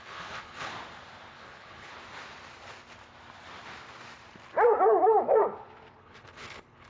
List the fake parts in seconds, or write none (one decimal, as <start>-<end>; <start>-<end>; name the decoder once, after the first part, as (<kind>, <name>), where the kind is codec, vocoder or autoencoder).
0.0-0.7 (codec, HILCodec); 1.3-1.9; 6.0-6.9